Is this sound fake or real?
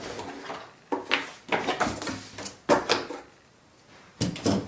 real